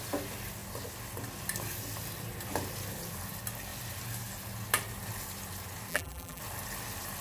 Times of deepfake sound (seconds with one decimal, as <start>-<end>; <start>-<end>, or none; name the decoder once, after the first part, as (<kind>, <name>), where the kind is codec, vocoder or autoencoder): 5.9-6.4 (vocoder, BigVGAN v2)